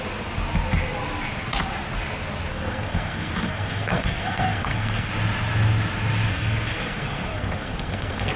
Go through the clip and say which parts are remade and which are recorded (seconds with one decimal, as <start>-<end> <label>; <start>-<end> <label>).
0.0-2.5 recorded; 2.5-5.1 remade; 5.1-6.3 recorded; 6.3-8.4 remade